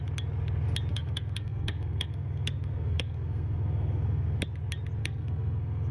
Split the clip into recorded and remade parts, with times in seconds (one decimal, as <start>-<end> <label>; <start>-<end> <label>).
0.0-0.9 recorded; 0.9-4.4 remade; 4.4-5.0 recorded; 5.0-5.9 remade